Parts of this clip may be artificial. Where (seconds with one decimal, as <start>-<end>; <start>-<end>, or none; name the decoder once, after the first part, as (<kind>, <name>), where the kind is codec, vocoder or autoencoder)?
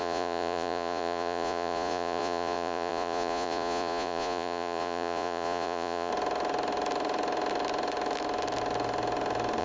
0.0-6.1 (vocoder, Vocos)